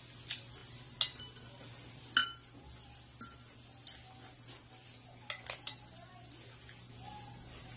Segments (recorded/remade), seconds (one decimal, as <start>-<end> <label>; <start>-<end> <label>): 0.0-7.8 recorded